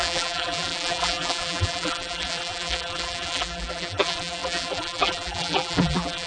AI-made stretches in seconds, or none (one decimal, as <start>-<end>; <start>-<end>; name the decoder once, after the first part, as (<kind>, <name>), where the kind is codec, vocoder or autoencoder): 0.0-6.3 (vocoder, BigVGAN v2)